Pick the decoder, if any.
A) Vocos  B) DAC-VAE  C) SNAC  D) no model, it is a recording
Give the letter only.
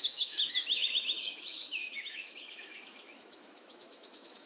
B